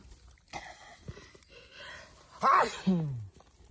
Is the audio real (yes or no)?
yes